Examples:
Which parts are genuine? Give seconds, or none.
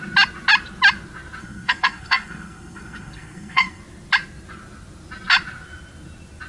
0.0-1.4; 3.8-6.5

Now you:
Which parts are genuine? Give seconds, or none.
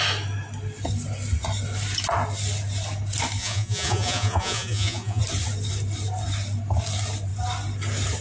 0.0-3.4; 5.2-8.2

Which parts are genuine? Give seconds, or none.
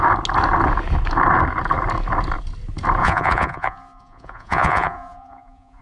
0.0-3.0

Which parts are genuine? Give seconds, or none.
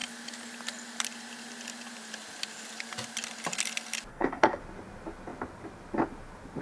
0.0-4.1; 4.6-6.6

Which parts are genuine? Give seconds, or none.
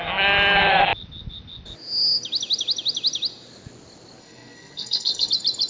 0.0-4.2; 5.3-5.7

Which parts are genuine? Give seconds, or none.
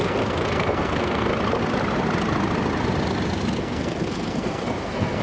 1.3-3.6